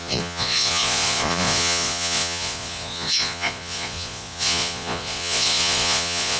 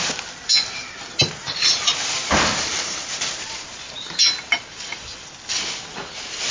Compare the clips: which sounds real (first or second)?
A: second